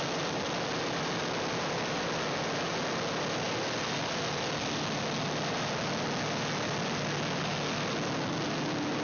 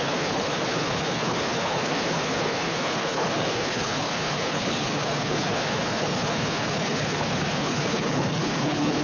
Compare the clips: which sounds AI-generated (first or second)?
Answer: second